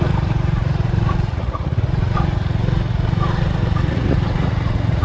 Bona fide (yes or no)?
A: no